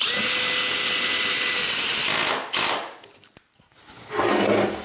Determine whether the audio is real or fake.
real